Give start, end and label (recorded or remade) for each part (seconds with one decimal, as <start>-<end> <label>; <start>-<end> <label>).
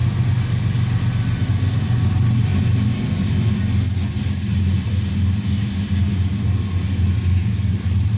0.0-8.2 recorded